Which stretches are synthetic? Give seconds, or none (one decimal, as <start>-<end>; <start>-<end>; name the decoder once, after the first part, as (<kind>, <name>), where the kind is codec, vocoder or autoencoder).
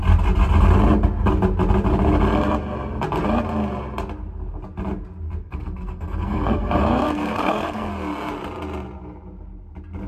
5.4-7.9 (codec, SNAC)